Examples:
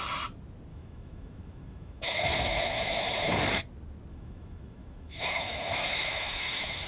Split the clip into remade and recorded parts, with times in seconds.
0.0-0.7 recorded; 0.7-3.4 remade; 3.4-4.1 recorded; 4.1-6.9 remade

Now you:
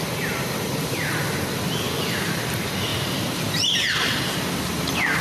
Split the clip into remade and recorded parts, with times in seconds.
0.0-5.2 recorded

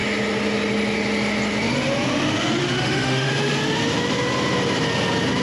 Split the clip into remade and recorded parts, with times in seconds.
0.0-2.6 recorded; 2.6-3.3 remade; 3.3-5.4 recorded

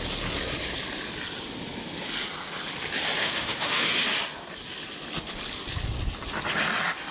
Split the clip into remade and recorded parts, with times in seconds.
0.0-3.2 recorded; 3.2-3.9 remade; 3.9-7.1 recorded

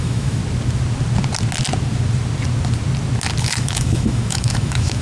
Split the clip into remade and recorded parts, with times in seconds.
0.0-0.4 remade; 0.4-3.4 recorded; 3.4-5.0 remade

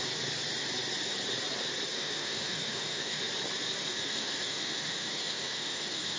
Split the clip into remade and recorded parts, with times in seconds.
0.0-1.9 recorded; 1.9-3.2 remade; 3.2-3.8 recorded; 3.8-6.2 remade

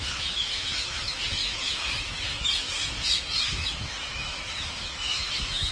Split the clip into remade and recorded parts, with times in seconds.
0.0-5.7 remade